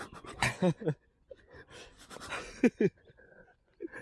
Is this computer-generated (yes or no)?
yes